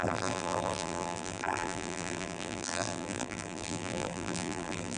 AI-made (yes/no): yes